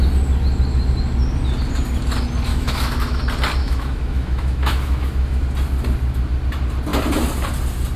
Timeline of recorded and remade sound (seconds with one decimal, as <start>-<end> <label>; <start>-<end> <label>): 0.0-2.5 recorded; 2.5-3.2 remade; 3.2-3.6 recorded; 3.6-5.4 remade; 5.4-8.0 recorded